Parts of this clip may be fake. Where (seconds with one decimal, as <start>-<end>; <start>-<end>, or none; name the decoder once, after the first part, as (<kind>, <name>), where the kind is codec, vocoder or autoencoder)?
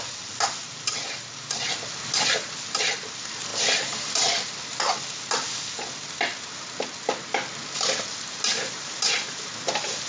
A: none